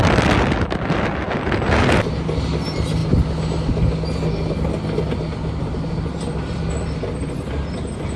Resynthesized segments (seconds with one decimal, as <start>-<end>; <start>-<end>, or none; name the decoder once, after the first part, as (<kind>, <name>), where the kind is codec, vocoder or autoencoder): none